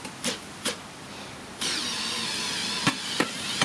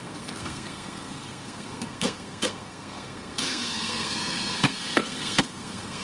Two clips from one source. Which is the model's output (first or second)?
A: second